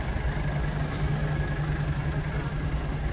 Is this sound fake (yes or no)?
no